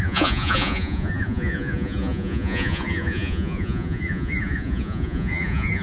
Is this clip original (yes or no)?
no